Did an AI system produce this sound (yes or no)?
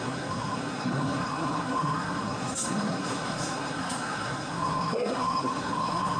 yes